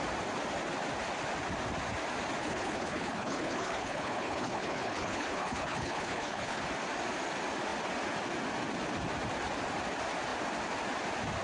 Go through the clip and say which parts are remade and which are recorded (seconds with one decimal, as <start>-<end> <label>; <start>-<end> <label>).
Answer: 0.0-2.4 recorded; 2.4-6.6 remade; 6.6-11.4 recorded